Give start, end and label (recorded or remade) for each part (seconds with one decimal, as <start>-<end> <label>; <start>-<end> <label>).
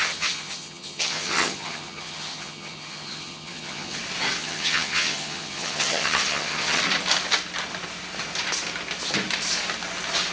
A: 0.0-4.0 remade; 4.0-4.4 recorded; 4.4-6.8 remade; 6.8-10.3 recorded